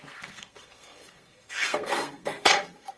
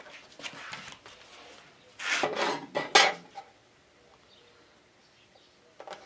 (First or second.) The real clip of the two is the second